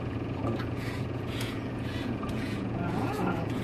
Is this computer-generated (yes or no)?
yes